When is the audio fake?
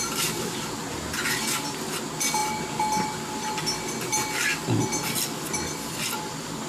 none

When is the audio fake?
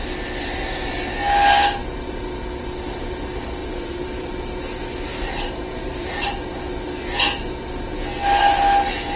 3.6-4.3 (vocoder, BigVGAN v2); 5.1-6.3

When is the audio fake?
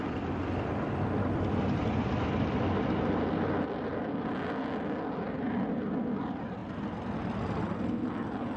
none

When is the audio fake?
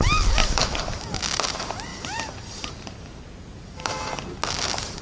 0.4-1.2 (vocoder, BigVGAN v2); 1.9-4.1